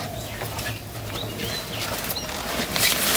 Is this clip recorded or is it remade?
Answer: recorded